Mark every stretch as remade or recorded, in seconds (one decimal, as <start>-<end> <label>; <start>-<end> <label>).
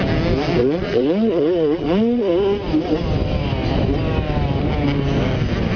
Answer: 0.0-0.6 recorded; 0.6-2.3 remade; 2.3-5.8 recorded